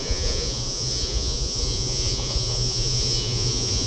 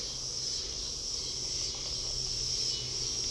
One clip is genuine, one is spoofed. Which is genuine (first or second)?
second